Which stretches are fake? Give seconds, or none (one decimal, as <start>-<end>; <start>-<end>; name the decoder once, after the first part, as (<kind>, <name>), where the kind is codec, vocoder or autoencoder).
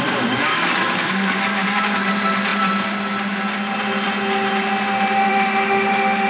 0.5-1.1 (codec, DAC)